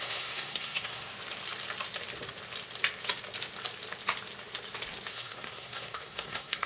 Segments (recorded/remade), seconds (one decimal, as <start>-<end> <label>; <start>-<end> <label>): 0.0-1.1 remade; 1.1-5.1 recorded; 5.1-6.7 remade

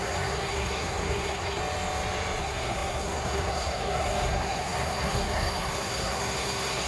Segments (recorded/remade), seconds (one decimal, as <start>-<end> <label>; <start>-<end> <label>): 0.0-1.6 remade; 1.6-2.4 recorded; 2.4-6.9 remade

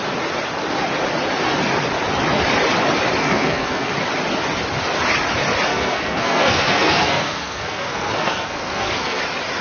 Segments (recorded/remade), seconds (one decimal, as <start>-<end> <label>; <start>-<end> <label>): 0.0-3.2 recorded; 3.2-3.9 remade; 3.9-5.7 recorded; 5.7-9.2 remade; 9.2-9.6 recorded

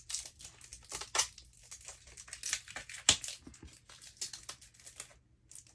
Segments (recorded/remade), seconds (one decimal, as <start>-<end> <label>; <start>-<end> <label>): 0.0-5.7 recorded

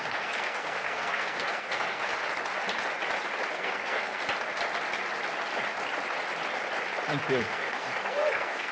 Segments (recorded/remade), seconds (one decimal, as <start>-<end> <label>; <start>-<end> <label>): 0.0-2.1 remade; 2.1-3.5 recorded; 3.5-4.2 remade; 4.2-7.4 recorded; 7.4-8.7 remade